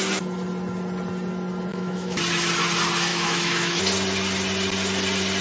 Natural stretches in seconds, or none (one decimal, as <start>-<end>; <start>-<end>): 0.0-1.7; 2.2-3.1; 3.8-5.4